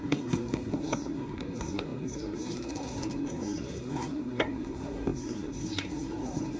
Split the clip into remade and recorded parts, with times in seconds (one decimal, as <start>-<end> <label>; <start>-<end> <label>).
0.0-6.6 remade